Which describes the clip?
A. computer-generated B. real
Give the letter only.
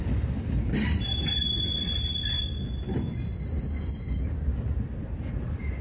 B